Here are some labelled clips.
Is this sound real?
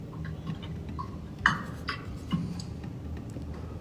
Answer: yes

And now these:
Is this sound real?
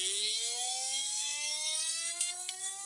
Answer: no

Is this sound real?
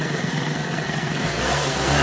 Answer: no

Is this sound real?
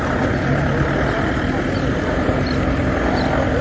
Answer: yes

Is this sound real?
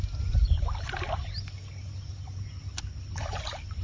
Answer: yes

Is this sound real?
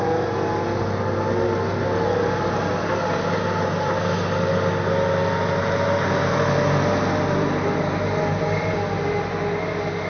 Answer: yes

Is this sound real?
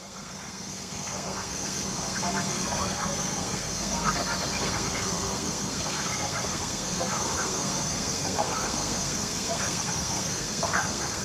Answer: no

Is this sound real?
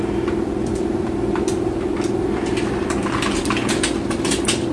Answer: yes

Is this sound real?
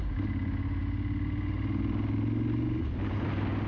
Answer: yes